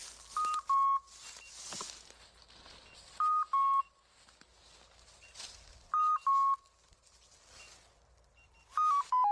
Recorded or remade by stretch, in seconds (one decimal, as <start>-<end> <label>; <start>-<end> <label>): 0.0-9.3 recorded